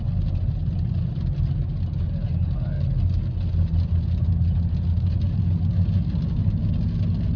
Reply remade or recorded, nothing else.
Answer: recorded